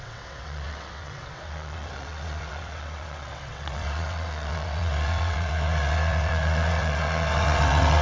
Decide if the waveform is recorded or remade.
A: remade